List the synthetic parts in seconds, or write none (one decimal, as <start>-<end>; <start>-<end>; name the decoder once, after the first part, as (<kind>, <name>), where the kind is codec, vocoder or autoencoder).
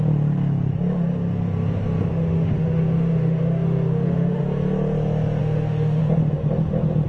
2.1-4.4 (autoencoder, DAC-VAE); 5.4-6.0